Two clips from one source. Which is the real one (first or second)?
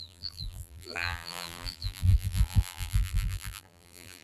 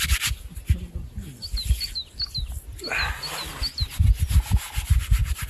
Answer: second